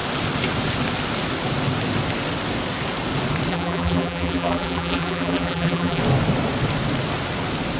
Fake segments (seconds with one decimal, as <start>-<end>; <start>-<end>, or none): 3.5-6.0